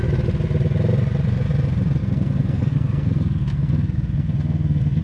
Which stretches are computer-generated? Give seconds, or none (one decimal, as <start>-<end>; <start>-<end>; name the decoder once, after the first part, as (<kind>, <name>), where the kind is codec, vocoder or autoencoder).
2.0-5.0 (codec, SNAC)